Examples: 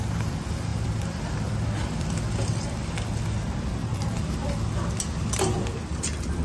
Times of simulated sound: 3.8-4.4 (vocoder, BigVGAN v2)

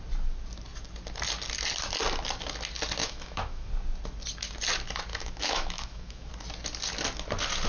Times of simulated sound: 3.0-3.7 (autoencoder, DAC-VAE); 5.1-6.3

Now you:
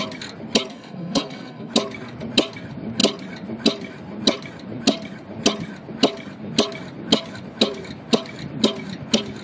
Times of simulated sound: 0.7-1.7 (codec, SNAC)